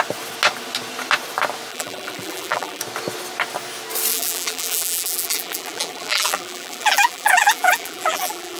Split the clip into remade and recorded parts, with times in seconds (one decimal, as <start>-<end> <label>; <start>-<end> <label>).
0.0-1.7 recorded; 1.7-2.8 remade; 2.8-4.1 recorded; 4.1-8.6 remade